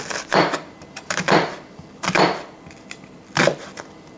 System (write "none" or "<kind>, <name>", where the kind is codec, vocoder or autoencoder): vocoder, BigVGAN v2